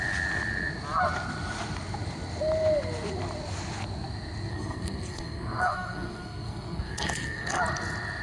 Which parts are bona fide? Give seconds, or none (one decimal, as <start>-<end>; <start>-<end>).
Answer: 0.0-4.5; 7.6-8.2

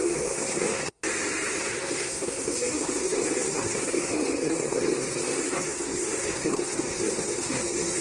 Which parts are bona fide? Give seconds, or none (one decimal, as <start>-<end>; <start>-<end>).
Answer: 1.0-1.6

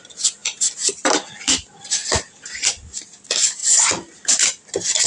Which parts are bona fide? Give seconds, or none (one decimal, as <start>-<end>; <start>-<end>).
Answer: 0.0-5.1

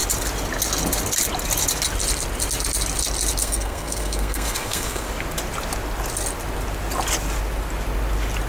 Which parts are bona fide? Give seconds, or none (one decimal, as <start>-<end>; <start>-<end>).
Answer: 0.0-3.4; 5.1-8.5

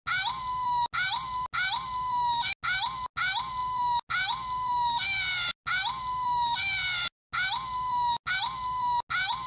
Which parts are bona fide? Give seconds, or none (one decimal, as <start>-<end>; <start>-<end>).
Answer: 0.0-9.5

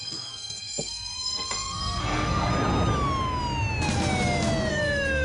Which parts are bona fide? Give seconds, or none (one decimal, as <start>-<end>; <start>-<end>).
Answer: 2.5-4.7

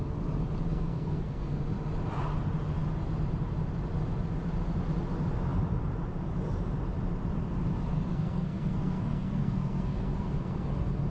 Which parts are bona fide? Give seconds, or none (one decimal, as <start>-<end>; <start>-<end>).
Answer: 0.0-0.7; 1.6-8.1; 10.7-11.1

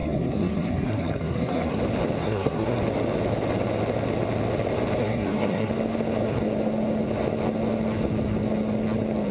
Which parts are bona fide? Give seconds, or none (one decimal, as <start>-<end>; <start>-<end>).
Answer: 1.8-2.2; 2.8-5.0; 5.7-9.3